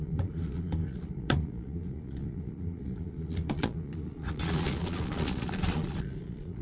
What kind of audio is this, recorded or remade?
remade